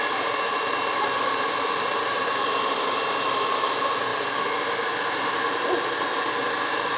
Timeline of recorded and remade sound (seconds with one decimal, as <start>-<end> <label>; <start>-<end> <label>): 0.0-7.0 recorded